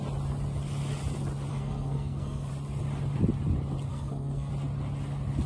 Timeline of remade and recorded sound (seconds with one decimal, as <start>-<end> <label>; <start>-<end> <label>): 0.0-1.5 recorded; 1.5-2.5 remade; 2.5-3.9 recorded; 3.9-4.5 remade; 4.5-5.5 recorded